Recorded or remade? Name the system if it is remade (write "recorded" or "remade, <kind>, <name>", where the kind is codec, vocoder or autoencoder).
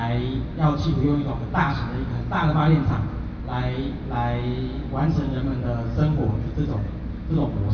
recorded